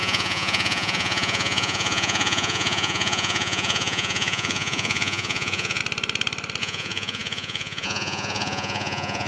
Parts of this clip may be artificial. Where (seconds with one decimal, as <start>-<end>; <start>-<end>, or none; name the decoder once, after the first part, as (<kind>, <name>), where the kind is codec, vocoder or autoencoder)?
0.0-5.8 (vocoder, Vocos); 6.6-9.3